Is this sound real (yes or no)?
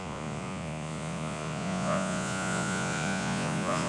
no